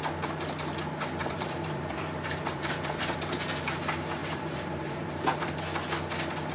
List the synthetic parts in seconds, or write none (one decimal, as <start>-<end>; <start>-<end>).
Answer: 1.2-3.8; 4.2-5.6